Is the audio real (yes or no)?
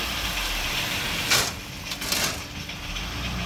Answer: yes